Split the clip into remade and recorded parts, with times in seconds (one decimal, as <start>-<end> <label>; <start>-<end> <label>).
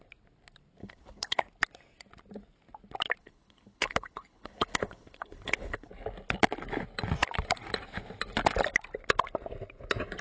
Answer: 0.0-0.8 recorded; 0.8-1.4 remade; 1.4-3.2 recorded; 3.2-5.9 remade; 5.9-10.2 recorded